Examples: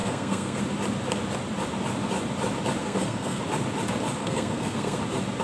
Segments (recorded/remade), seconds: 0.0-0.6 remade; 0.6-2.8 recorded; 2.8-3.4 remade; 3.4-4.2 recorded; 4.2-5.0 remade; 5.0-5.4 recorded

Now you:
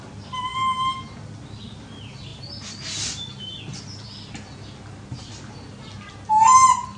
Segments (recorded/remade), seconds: 0.0-7.0 recorded

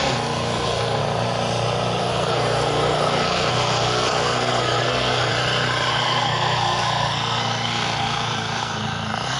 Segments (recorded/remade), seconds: 0.0-1.0 remade; 1.0-2.0 recorded; 2.0-5.3 remade; 5.3-5.9 recorded; 5.9-9.4 remade

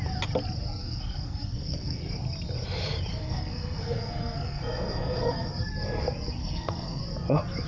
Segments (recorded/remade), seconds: 0.0-0.8 recorded; 0.8-2.0 remade; 2.0-3.1 recorded; 3.1-5.5 remade; 5.5-6.4 recorded; 6.4-7.0 remade; 7.0-7.7 recorded

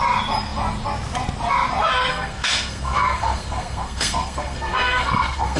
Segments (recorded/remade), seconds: 0.0-2.1 recorded; 2.1-5.6 remade

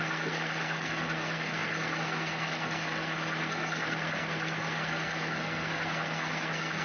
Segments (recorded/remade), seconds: 0.0-6.8 remade

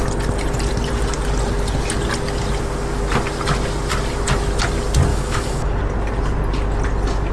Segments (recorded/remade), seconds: 0.0-5.1 recorded; 5.1-5.8 remade; 5.8-7.3 recorded

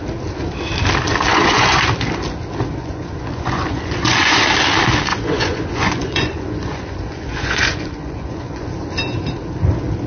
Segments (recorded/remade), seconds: 0.0-1.3 recorded; 1.3-1.8 remade; 1.8-2.8 recorded; 2.8-4.4 remade; 4.4-5.1 recorded; 5.1-8.7 remade; 8.7-10.1 recorded